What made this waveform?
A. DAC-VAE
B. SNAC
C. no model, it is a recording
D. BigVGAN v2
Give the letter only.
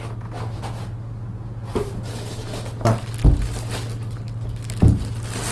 C